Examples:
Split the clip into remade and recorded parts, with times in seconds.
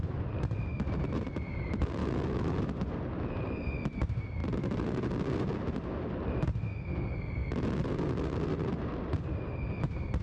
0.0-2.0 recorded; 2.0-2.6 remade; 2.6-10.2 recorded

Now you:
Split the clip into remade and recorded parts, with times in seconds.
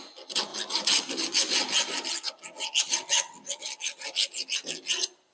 0.0-5.3 recorded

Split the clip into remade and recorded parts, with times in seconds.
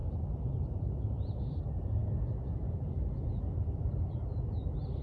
0.0-1.6 remade; 1.6-5.0 recorded